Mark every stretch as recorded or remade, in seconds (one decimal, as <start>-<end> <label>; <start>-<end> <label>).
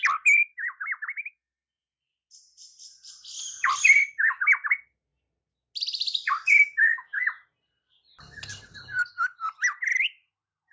0.0-10.7 recorded